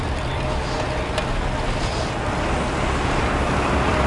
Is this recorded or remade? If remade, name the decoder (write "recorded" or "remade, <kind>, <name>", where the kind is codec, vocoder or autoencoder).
recorded